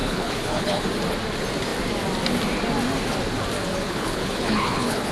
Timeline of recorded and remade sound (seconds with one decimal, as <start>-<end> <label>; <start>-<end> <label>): 0.0-0.8 remade; 0.8-3.7 recorded; 3.7-5.1 remade

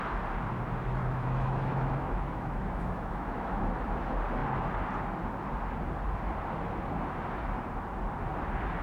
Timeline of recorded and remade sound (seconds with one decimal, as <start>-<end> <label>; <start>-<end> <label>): 0.0-1.0 recorded; 1.0-3.6 remade; 3.6-8.8 recorded